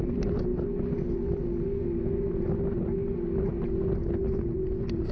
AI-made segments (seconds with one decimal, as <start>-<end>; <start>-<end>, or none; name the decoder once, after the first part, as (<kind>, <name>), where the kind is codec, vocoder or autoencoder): none